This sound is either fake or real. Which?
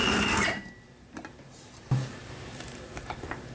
fake